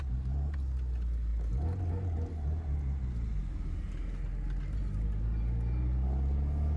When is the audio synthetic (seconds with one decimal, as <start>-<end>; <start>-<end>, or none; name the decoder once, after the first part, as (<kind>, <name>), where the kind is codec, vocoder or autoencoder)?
none